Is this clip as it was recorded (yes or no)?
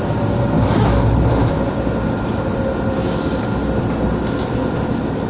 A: yes